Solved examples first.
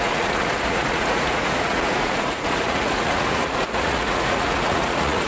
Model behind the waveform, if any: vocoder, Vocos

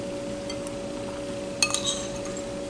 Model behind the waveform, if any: none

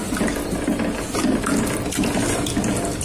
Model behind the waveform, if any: none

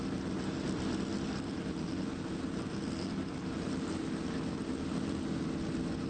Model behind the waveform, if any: none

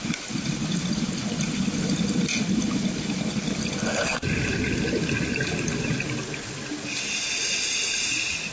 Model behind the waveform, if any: none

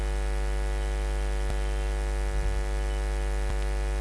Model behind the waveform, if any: none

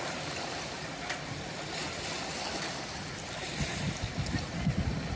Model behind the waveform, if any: none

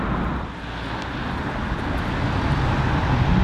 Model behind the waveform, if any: none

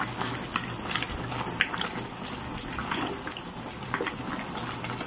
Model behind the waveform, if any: none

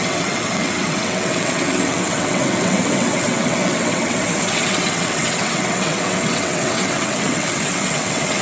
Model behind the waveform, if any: vocoder, WaveNeXt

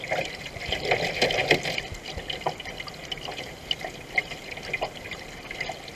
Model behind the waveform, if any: none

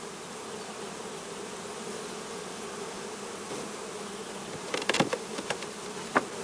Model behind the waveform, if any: none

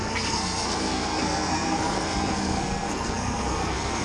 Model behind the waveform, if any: codec, SNAC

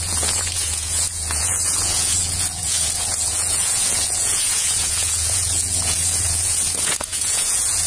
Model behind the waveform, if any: vocoder, Vocos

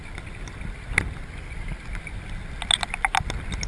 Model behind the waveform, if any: none